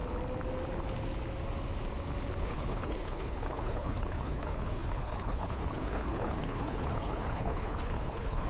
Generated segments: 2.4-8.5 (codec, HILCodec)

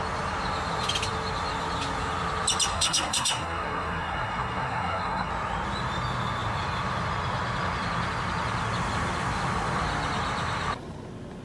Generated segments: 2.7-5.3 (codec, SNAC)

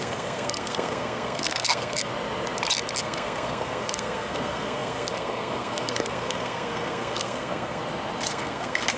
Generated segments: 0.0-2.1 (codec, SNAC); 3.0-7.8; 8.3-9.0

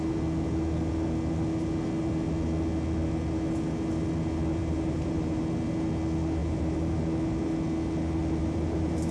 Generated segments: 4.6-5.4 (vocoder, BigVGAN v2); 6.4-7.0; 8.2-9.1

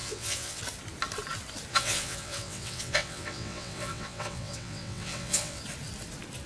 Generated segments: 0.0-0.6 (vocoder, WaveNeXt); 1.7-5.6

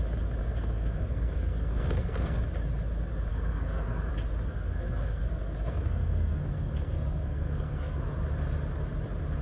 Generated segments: 0.4-2.4 (codec, SNAC); 3.3-4.1; 4.5-8.0